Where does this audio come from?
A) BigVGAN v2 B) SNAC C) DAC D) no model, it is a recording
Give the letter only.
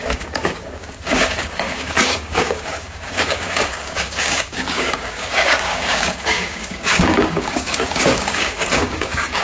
C